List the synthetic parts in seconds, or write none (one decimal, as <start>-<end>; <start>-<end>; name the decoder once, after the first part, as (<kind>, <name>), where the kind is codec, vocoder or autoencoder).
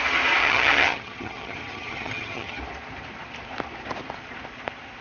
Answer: 0.4-2.6 (vocoder, HiFi-GAN)